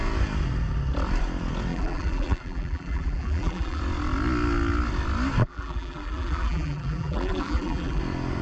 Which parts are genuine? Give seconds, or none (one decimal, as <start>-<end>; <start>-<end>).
0.0-1.7; 3.8-5.4; 8.0-8.4